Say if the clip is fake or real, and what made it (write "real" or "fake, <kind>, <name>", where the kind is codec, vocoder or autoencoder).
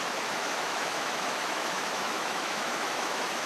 fake, autoencoder, DAC-VAE